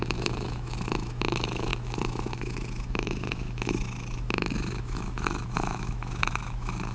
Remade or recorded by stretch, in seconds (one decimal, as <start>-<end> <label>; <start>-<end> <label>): 0.0-6.9 remade